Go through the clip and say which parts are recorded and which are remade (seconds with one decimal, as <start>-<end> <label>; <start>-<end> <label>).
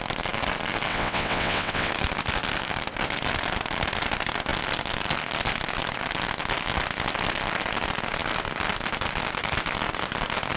0.0-0.9 recorded; 0.9-1.9 remade; 1.9-10.6 recorded